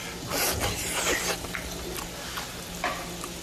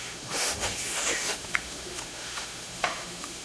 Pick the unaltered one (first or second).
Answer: first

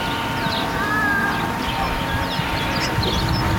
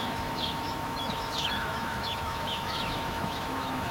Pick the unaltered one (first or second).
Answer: first